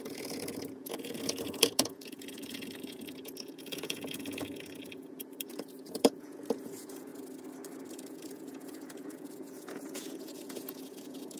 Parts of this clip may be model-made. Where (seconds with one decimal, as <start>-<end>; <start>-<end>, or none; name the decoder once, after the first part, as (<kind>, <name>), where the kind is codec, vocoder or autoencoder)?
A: 0.0-7.1 (vocoder, Vocos); 7.9-11.4